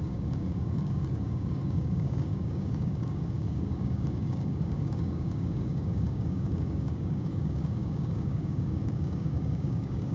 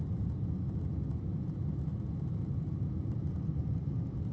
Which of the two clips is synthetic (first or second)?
first